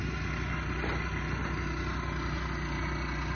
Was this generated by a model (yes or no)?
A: no